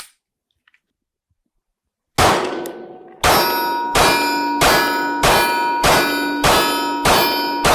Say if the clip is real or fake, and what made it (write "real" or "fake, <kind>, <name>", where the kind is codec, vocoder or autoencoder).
real